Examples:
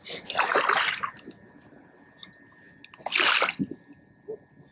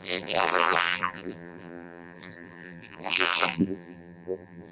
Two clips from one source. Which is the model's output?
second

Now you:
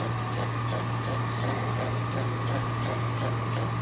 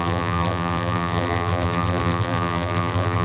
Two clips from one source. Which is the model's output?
second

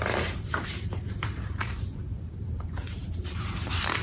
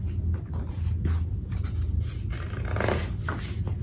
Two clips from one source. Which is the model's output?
first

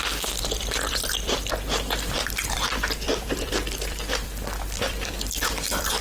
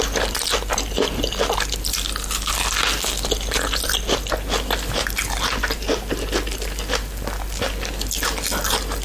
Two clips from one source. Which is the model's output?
first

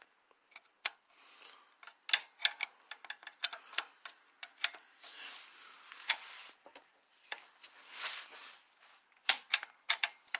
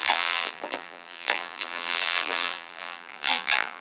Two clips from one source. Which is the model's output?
second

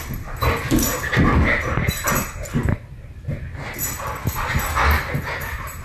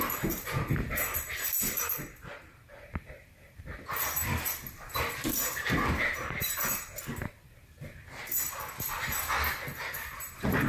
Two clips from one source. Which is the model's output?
second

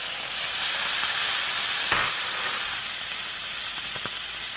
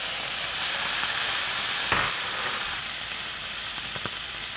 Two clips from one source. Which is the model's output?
second